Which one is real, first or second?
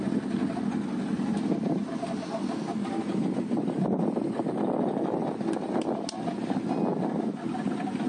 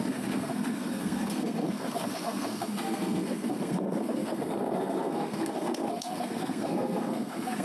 first